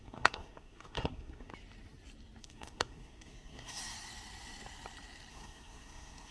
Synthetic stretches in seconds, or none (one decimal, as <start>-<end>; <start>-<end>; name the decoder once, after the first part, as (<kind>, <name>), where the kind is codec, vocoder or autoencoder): 0.0-1.5 (codec, SNAC); 2.4-3.8; 5.3-6.3